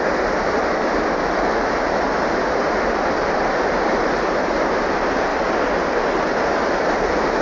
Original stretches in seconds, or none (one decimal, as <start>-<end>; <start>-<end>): 0.0-1.2; 1.7-7.4